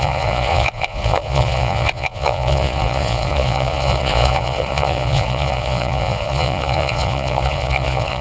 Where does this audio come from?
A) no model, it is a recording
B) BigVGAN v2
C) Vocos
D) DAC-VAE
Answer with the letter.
C